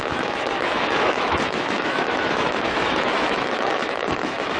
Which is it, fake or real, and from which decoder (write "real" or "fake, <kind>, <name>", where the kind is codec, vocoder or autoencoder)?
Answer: fake, autoencoder, DAC-VAE